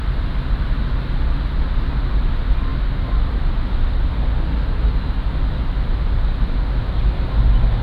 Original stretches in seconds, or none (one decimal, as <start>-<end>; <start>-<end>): 0.0-7.8